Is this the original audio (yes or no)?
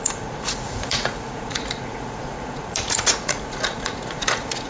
no